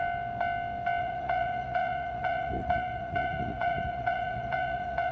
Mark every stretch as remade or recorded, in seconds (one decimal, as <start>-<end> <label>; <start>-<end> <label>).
0.0-1.0 recorded; 1.0-5.1 remade